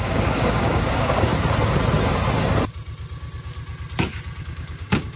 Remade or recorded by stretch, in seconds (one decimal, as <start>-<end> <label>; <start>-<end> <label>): 0.0-1.3 remade; 1.3-4.4 recorded; 4.4-5.2 remade